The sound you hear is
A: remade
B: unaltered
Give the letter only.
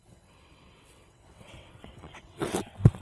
A